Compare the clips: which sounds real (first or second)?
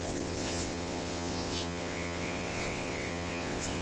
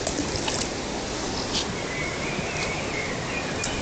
second